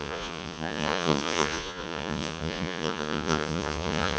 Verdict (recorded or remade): remade